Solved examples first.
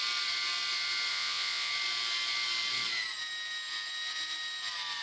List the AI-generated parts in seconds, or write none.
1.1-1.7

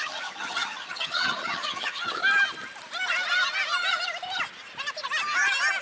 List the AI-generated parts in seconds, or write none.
0.0-2.2

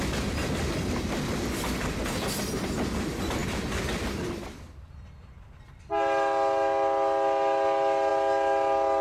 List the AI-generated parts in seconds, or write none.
3.4-4.4

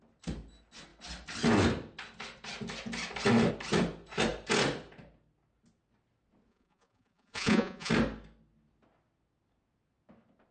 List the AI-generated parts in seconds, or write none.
6.5-7.9